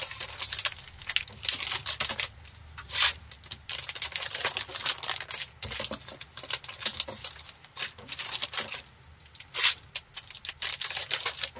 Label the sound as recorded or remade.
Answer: recorded